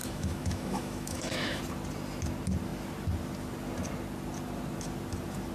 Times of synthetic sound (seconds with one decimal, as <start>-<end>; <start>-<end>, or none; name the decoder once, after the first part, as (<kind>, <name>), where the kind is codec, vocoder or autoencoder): 0.0-1.6 (autoencoder, DAC-VAE)